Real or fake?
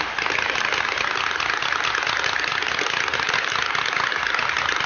real